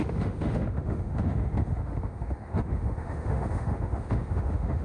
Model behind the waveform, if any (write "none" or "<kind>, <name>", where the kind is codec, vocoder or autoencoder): autoencoder, DAC-VAE